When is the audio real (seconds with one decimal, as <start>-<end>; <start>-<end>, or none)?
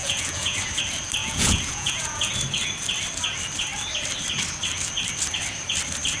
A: 0.6-1.2; 2.3-6.2